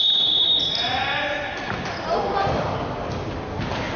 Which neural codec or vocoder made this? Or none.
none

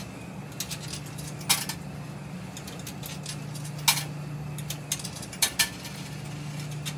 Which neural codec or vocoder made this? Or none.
none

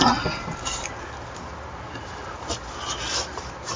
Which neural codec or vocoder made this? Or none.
none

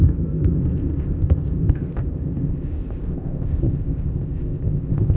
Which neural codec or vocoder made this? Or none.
codec, ZipCodec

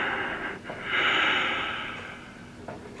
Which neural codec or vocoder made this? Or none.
none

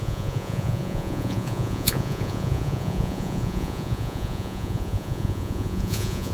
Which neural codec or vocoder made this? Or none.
vocoder, Vocos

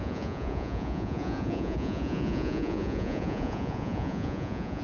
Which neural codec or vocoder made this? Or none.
vocoder, Vocos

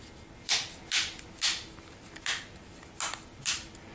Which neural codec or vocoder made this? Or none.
none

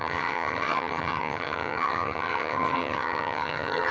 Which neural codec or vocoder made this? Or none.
vocoder, HiFi-GAN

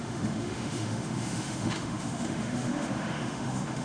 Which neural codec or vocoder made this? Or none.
autoencoder, DAC-VAE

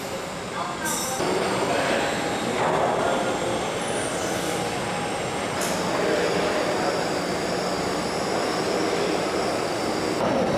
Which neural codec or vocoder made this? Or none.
none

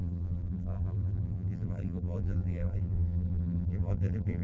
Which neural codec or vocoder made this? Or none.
vocoder, BigVGAN v2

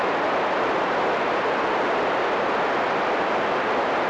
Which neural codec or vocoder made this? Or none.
none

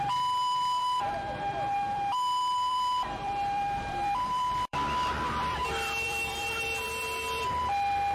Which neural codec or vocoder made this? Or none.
vocoder, BigVGAN v2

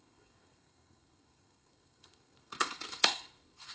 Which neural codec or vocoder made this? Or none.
codec, SNAC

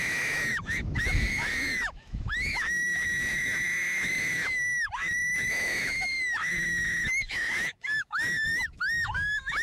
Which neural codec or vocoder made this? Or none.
autoencoder, DAC-VAE